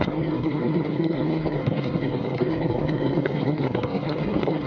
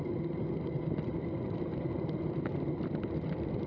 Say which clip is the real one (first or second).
second